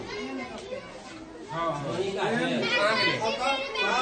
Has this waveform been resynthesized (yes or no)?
no